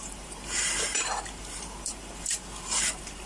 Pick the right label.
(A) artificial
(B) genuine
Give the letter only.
A